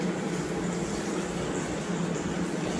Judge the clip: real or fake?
real